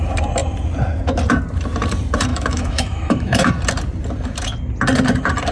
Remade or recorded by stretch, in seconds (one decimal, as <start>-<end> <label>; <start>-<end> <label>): 0.0-2.3 recorded; 2.3-3.5 remade; 3.5-5.5 recorded

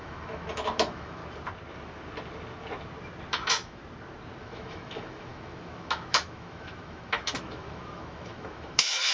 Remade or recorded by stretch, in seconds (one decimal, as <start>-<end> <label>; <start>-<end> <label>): 0.0-1.2 remade; 1.2-3.3 recorded; 3.3-3.8 remade; 3.8-4.4 recorded; 4.4-9.1 remade

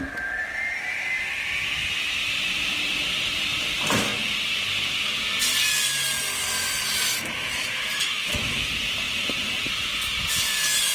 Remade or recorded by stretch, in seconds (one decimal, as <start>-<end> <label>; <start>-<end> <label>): 0.0-7.1 recorded; 7.1-8.7 remade; 8.7-10.9 recorded

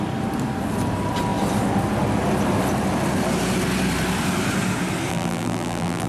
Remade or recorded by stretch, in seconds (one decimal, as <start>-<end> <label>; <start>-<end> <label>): 0.0-5.1 recorded; 5.1-6.1 remade

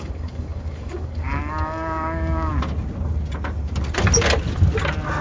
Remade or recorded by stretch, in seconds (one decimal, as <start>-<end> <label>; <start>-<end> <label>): 0.0-2.5 remade; 2.5-5.2 recorded

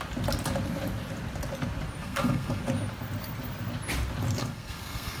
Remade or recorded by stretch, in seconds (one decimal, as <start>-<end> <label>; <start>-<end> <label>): 0.0-2.0 recorded; 2.0-2.6 remade; 2.6-4.4 recorded; 4.4-5.2 remade

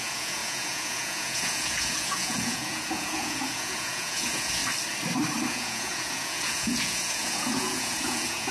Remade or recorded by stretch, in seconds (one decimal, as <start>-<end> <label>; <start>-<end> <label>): 0.0-4.6 remade; 4.6-5.5 recorded; 5.5-8.5 remade

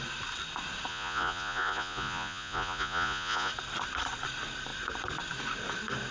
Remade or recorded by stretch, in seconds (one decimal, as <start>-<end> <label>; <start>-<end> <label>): 0.0-0.9 recorded; 0.9-3.5 remade; 3.5-6.1 recorded